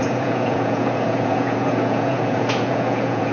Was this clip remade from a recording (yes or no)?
yes